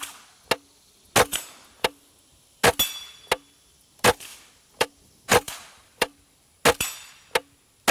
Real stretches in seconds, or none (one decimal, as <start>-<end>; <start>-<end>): 0.0-1.3; 2.1-4.3; 6.5-7.9